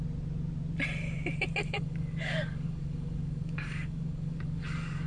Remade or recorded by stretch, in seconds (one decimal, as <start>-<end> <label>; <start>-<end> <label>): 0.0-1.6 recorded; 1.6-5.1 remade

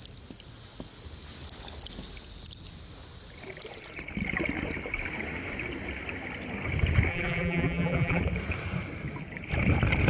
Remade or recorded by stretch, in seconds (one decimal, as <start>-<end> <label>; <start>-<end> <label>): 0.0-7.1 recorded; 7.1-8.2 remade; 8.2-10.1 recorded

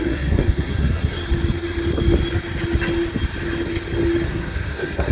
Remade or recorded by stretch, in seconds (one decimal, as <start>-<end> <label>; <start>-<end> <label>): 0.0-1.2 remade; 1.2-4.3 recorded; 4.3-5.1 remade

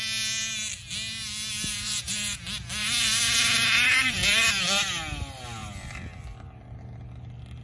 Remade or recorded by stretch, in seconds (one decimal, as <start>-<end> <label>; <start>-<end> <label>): 0.0-1.7 recorded; 1.7-2.4 remade; 2.4-2.8 recorded; 2.8-4.5 remade; 4.5-7.6 recorded